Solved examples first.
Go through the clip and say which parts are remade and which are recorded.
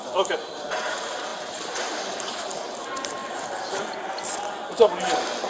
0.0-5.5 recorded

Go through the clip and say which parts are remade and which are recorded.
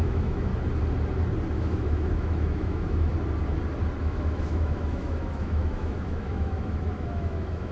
0.0-0.5 remade; 0.5-1.5 recorded; 1.5-3.1 remade; 3.1-4.0 recorded; 4.0-7.7 remade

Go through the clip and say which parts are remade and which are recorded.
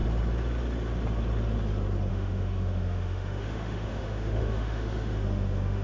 0.0-2.1 recorded; 2.1-5.8 remade